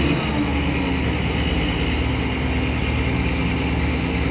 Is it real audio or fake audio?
real